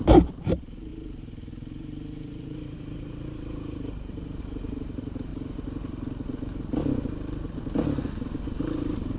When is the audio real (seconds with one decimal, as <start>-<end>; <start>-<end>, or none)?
5.3-8.6